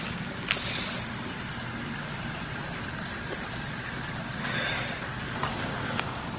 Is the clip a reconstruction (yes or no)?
no